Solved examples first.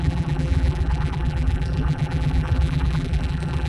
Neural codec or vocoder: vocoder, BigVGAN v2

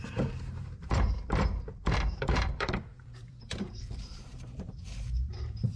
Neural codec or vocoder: vocoder, BigVGAN v2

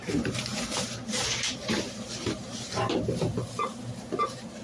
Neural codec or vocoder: vocoder, BigVGAN v2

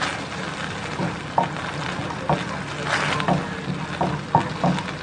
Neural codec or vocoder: none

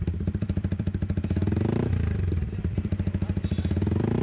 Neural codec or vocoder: vocoder, BigVGAN v2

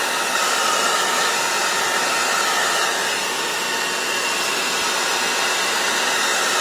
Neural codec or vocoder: none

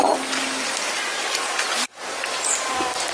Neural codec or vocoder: none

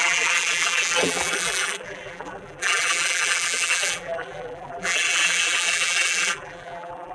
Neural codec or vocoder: vocoder, BigVGAN v2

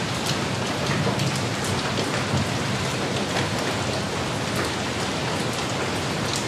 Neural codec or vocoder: none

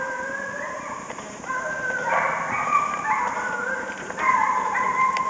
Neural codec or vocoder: vocoder, BigVGAN v2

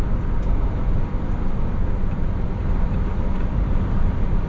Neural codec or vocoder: none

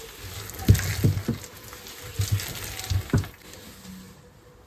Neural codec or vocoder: none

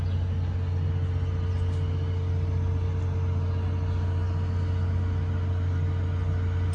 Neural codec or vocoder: none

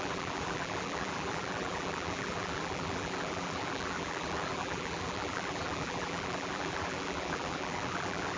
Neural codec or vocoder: vocoder, BigVGAN v2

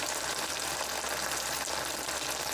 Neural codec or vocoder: none